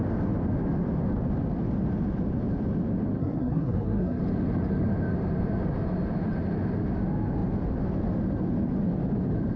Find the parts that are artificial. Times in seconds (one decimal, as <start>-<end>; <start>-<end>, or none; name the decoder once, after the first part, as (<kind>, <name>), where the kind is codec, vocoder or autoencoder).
3.2-4.2 (codec, SNAC)